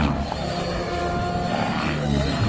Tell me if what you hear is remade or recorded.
recorded